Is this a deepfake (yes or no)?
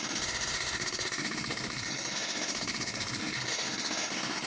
yes